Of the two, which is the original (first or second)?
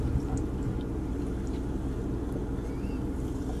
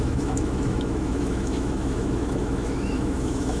first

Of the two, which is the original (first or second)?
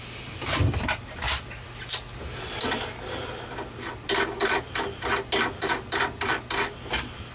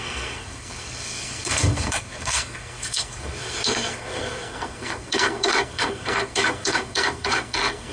first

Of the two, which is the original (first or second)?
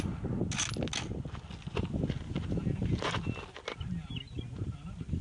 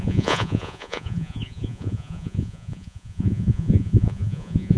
first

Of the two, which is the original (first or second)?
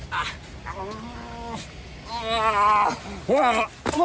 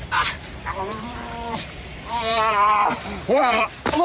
first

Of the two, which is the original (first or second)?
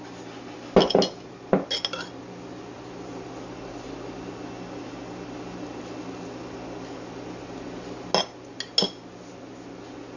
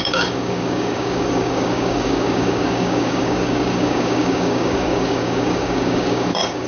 first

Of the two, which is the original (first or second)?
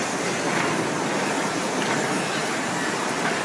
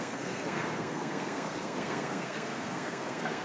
first